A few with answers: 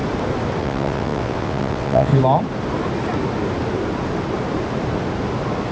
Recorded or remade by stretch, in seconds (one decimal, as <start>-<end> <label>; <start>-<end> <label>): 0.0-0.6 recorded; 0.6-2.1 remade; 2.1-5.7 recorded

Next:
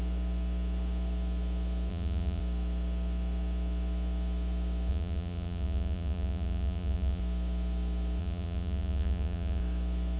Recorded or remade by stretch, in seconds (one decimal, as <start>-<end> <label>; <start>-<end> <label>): 0.0-1.9 recorded; 1.9-2.4 remade; 2.4-4.9 recorded; 4.9-7.2 remade; 7.2-8.2 recorded; 8.2-9.6 remade; 9.6-10.2 recorded

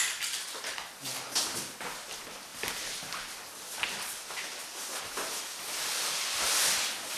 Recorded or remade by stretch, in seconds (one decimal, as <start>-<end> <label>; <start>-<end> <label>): 0.0-7.2 recorded